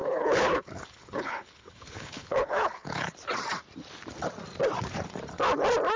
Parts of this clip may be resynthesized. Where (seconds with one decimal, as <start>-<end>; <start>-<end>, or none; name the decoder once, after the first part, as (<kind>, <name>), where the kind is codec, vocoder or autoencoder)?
0.0-3.1 (codec, HILCodec)